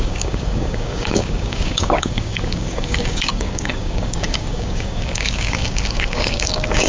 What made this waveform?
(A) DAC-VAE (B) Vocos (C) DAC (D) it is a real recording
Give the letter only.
C